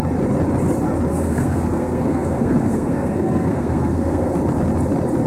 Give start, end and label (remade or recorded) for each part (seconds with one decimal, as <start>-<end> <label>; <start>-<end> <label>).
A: 0.0-1.1 recorded; 1.1-4.3 remade; 4.3-5.3 recorded